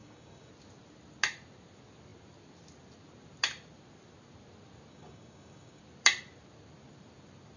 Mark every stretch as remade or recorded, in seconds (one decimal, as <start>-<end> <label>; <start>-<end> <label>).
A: 0.0-0.5 remade; 0.5-4.9 recorded; 4.9-5.8 remade; 5.8-7.6 recorded